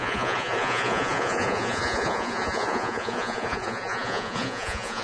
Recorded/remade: remade